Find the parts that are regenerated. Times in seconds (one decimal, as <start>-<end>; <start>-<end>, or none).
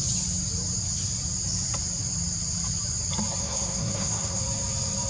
3.4-4.4